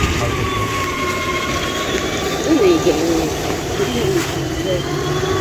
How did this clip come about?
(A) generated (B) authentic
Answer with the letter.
A